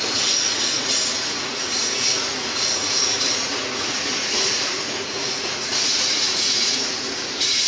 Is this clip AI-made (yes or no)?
yes